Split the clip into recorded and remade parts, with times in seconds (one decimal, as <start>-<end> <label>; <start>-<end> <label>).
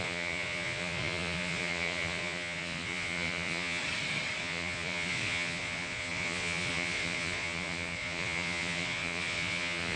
0.0-3.8 remade; 3.8-4.4 recorded; 4.4-10.0 remade